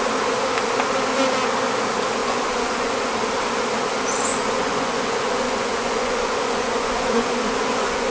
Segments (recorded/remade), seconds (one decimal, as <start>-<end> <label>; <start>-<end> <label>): 0.0-2.2 recorded; 2.2-3.1 remade; 3.1-4.3 recorded; 4.3-8.1 remade